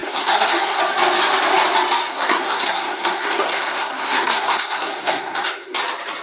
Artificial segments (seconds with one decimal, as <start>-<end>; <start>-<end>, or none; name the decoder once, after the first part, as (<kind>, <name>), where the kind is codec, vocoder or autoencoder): 0.0-0.8 (codec, SNAC); 2.1-5.8